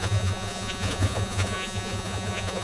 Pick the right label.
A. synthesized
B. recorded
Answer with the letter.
A